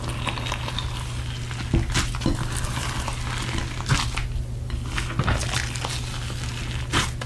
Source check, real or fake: real